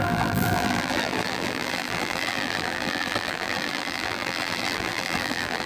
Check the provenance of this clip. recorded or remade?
remade